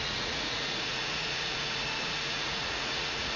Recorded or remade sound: remade